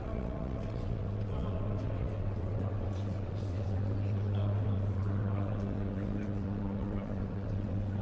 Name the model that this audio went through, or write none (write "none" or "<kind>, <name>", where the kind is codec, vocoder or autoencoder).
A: vocoder, WaveNeXt